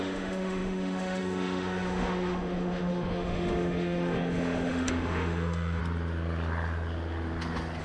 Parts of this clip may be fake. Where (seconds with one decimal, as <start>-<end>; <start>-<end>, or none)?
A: 0.0-5.8